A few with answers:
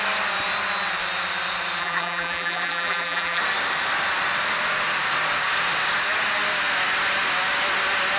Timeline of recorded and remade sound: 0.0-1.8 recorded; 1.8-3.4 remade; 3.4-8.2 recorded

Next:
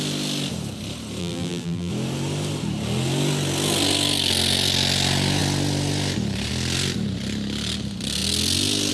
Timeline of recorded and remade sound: 0.0-1.2 recorded; 1.2-1.9 remade; 1.9-8.9 recorded